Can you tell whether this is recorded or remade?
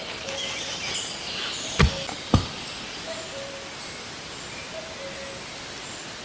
recorded